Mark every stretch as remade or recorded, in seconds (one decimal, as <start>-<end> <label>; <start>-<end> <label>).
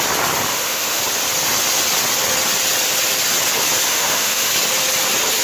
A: 0.0-0.5 recorded; 0.5-1.0 remade; 1.0-3.9 recorded; 3.9-4.5 remade; 4.5-5.4 recorded